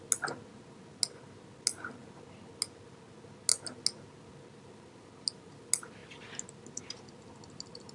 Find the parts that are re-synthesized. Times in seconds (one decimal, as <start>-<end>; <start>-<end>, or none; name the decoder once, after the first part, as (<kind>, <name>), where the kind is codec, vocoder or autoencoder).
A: none